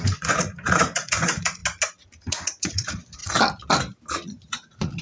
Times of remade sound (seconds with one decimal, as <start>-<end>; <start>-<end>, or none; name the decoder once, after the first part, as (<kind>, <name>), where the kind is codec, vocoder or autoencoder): 0.0-1.6 (vocoder, Vocos); 2.3-3.2; 4.1-5.0